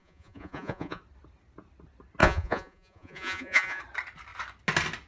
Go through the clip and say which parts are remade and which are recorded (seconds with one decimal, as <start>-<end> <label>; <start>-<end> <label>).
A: 0.0-1.0 remade; 1.0-2.2 recorded; 2.2-3.8 remade; 3.8-5.1 recorded